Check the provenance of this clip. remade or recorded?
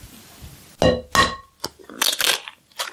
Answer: recorded